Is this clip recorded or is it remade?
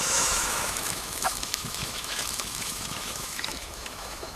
remade